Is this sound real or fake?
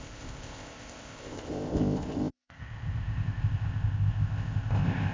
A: fake